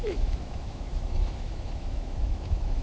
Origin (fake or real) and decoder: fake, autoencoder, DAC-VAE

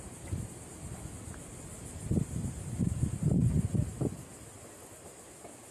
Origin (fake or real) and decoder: real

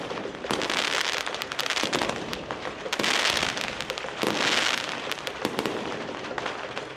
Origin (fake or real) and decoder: real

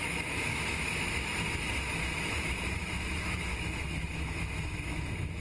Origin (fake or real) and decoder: fake, autoencoder, DAC-VAE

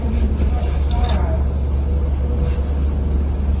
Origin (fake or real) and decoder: real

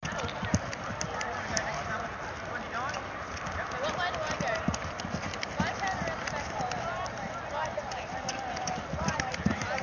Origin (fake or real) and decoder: real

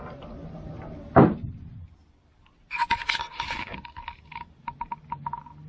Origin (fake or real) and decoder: real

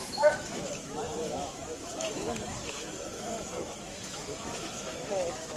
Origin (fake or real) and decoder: fake, autoencoder, DAC-VAE